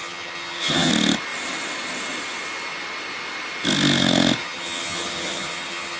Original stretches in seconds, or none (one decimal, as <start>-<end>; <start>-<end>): 0.9-4.4